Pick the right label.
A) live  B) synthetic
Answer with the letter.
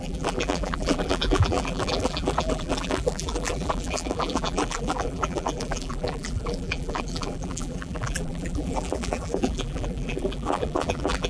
B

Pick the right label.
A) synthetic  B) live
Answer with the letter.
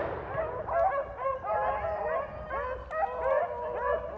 B